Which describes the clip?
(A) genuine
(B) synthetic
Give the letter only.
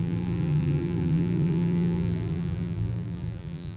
B